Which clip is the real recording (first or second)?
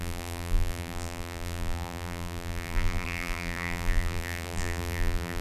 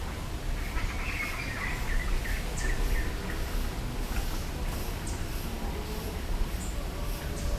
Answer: second